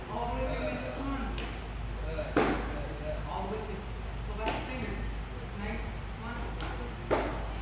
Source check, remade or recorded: recorded